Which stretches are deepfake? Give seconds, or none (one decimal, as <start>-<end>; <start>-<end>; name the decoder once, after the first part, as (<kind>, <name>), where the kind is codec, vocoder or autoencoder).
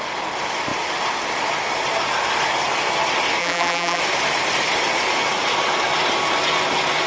3.4-4.0 (vocoder, BigVGAN v2)